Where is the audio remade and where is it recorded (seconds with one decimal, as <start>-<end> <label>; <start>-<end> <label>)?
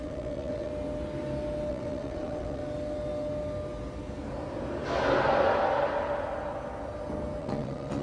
0.0-0.7 remade; 0.7-1.7 recorded; 1.7-2.6 remade; 2.6-7.4 recorded; 7.4-8.0 remade